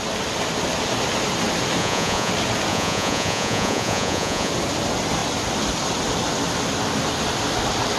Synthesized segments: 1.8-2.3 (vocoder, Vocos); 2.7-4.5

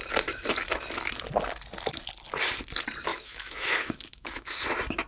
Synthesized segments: 3.1-4.5 (autoencoder, DAC-VAE)

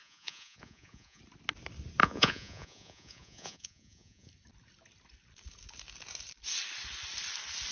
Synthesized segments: 0.0-1.2 (vocoder, Vocos); 2.0-4.3

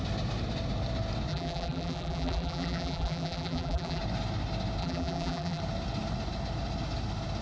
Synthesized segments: 1.3-4.0 (vocoder, BigVGAN v2); 4.8-5.6

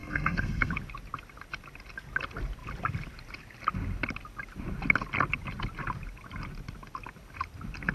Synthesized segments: 0.0-0.7 (codec, SNAC)

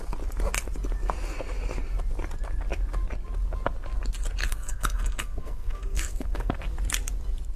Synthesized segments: 4.4-6.5 (codec, SNAC)

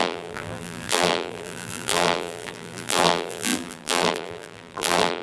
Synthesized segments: 0.0-5.2 (vocoder, BigVGAN v2)

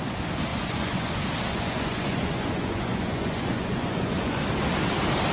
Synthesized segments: 0.5-1.1 (vocoder, Vocos); 1.5-4.4